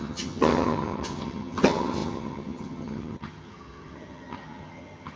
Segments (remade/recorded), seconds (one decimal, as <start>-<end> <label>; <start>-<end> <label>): 0.0-5.2 remade